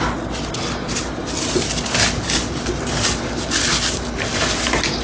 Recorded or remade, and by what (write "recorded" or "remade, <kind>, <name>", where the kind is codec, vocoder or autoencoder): recorded